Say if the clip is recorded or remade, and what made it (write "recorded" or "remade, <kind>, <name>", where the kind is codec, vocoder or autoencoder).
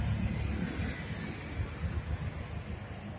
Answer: recorded